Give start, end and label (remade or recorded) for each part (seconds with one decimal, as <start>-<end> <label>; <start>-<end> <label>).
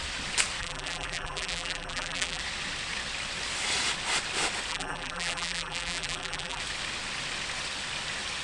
0.0-0.6 recorded; 0.6-2.4 remade; 2.4-4.7 recorded; 4.7-6.6 remade; 6.6-8.4 recorded